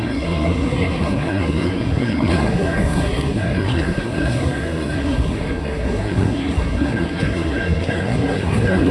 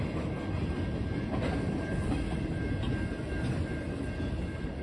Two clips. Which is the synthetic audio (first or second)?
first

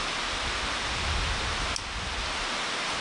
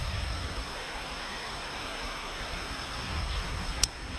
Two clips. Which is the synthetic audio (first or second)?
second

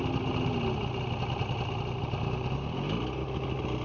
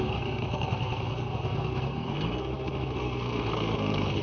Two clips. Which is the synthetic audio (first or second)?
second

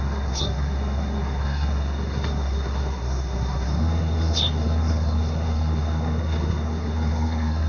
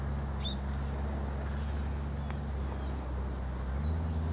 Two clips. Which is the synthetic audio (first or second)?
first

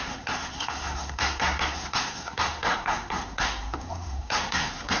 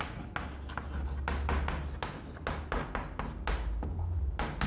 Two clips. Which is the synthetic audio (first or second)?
first